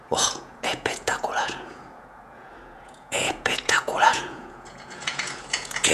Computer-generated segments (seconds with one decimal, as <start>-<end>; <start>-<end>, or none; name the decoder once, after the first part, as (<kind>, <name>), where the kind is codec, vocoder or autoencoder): 0.0-5.9 (vocoder, Vocos)